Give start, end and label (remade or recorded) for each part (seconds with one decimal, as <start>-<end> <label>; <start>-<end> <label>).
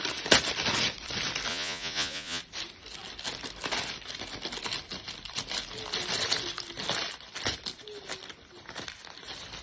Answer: 0.0-1.5 recorded; 1.5-2.4 remade; 2.4-9.6 recorded